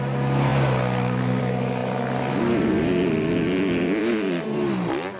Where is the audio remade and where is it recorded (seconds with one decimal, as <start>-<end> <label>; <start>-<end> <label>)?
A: 0.0-5.2 recorded